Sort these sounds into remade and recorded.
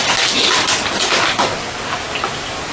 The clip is recorded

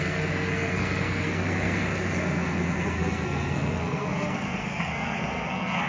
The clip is remade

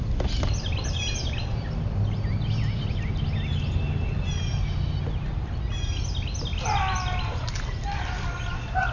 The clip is recorded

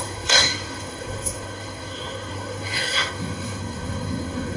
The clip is remade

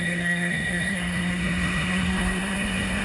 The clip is remade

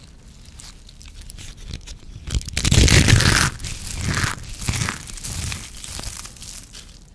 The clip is recorded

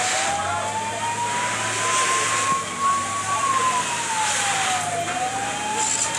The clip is recorded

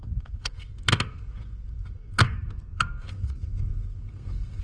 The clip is remade